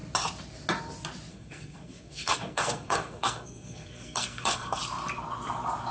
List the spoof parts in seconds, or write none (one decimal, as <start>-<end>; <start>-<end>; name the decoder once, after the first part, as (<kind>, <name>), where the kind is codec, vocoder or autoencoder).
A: 1.3-4.8 (codec, SNAC)

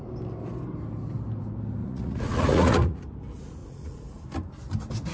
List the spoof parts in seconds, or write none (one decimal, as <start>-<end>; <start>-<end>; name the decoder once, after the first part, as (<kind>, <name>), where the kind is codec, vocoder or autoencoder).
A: 1.8-3.0 (vocoder, Vocos); 3.6-4.2

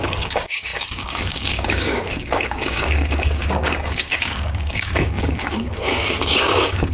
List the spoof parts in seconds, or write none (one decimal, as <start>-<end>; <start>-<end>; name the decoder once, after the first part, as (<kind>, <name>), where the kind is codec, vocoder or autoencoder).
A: 0.0-6.9 (codec, DAC)

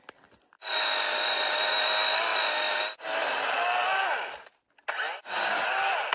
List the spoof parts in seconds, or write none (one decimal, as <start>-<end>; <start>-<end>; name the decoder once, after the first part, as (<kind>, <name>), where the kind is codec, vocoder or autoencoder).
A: none

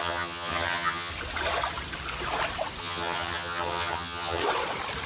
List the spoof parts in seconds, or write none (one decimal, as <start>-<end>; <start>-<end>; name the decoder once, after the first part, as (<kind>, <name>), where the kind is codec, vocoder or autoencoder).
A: 0.0-1.1 (vocoder, HiFi-GAN); 2.8-4.4

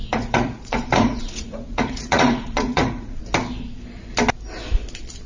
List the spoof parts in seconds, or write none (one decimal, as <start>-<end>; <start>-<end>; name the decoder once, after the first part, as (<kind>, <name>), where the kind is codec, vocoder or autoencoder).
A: 0.0-3.2 (vocoder, Vocos)